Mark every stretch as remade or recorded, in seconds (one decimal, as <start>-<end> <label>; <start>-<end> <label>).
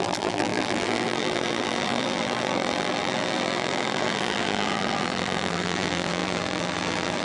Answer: 0.0-7.2 remade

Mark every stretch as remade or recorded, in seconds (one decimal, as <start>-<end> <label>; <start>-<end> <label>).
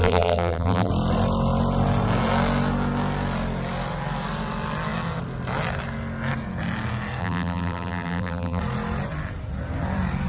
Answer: 0.0-0.9 remade; 0.9-7.2 recorded; 7.2-8.6 remade; 8.6-10.3 recorded